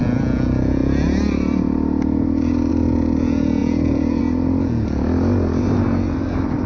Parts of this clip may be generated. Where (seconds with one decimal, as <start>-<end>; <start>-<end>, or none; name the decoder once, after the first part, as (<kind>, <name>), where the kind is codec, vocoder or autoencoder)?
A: none

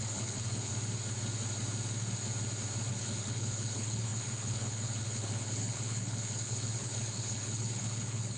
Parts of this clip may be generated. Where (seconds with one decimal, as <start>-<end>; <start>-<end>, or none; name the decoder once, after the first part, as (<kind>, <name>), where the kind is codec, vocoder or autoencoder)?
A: 0.0-0.7 (codec, HILCodec); 2.9-8.4